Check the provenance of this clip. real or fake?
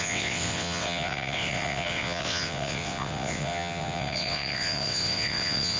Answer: fake